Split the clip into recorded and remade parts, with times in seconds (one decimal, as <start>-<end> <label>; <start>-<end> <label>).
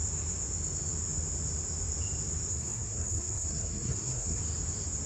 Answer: 0.0-2.5 recorded; 2.5-4.4 remade; 4.4-5.1 recorded